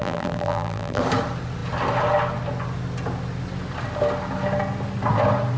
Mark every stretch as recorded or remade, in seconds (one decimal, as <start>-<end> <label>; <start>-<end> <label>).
0.0-1.0 remade; 1.0-5.6 recorded